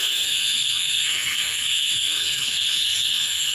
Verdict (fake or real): fake